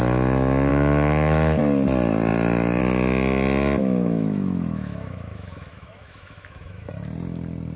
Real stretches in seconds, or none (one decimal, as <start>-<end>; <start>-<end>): 0.0-0.7; 1.6-3.8; 6.9-7.8